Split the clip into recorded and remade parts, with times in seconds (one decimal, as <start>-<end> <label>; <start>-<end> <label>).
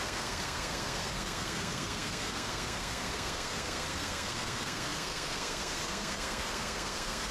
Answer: 0.0-7.3 remade